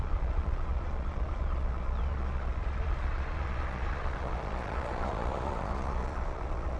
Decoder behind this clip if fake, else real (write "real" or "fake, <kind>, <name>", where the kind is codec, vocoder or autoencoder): fake, vocoder, Vocos